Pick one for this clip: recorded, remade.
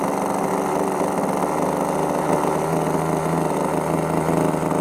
recorded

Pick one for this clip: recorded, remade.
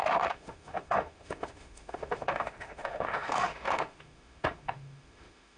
remade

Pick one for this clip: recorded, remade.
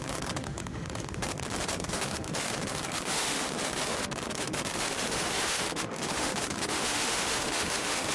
remade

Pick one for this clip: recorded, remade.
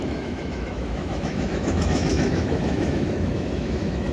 remade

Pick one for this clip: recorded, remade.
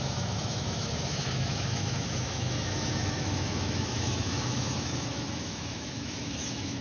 remade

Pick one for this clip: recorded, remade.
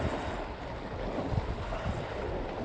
recorded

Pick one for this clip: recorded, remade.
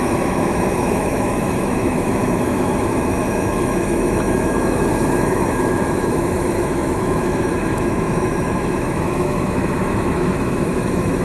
remade